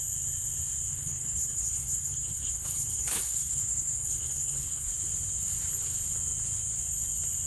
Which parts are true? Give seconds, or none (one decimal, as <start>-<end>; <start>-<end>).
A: 0.0-0.9; 4.9-7.5